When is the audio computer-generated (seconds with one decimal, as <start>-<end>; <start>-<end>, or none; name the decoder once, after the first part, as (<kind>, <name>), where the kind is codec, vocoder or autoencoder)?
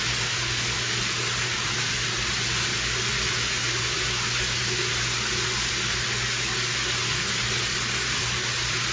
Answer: none